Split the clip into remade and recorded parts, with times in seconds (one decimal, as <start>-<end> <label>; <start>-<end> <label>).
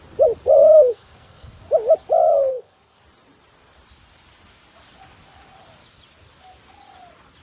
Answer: 0.0-0.6 recorded; 0.6-1.6 remade; 1.6-2.5 recorded; 2.5-3.0 remade; 3.0-7.4 recorded